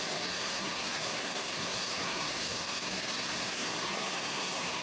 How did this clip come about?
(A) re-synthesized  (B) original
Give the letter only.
A